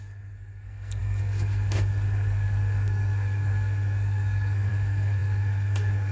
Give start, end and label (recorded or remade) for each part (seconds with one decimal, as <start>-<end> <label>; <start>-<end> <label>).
0.0-6.1 remade